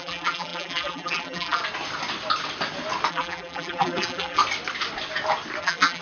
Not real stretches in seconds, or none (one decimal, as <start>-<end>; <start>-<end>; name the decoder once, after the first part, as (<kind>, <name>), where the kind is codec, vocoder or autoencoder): 0.0-1.6 (vocoder, BigVGAN v2); 3.1-4.4; 5.6-6.0